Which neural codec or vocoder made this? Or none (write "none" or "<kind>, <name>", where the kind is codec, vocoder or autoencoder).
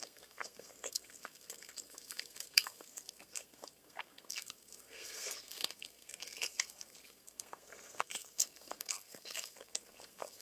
codec, SNAC